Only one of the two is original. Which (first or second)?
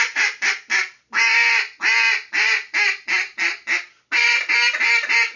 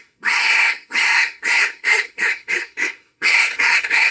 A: first